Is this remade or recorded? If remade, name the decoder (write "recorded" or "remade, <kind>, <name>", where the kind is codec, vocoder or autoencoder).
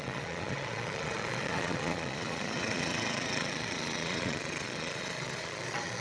remade, vocoder, Vocos